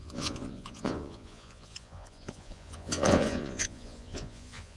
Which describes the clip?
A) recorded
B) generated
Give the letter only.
B